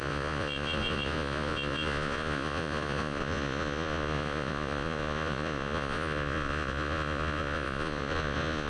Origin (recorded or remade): remade